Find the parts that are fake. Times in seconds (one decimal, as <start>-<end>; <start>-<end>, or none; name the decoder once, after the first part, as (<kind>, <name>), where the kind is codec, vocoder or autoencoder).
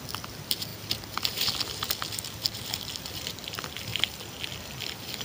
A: none